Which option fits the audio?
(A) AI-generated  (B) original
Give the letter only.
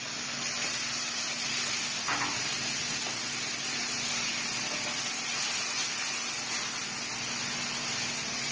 B